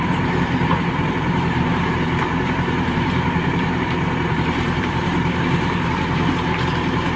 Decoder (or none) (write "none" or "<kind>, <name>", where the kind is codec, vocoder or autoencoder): vocoder, BigVGAN v2